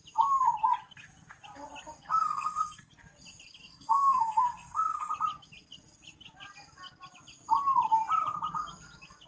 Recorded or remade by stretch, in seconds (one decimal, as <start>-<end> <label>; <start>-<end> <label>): 0.0-2.2 recorded; 2.2-2.9 remade; 2.9-3.7 recorded; 3.7-5.1 remade; 5.1-9.3 recorded